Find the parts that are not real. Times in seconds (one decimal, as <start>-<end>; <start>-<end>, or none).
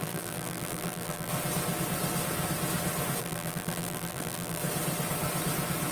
0.0-1.3; 3.2-4.6